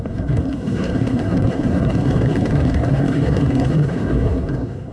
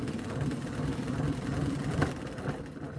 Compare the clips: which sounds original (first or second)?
second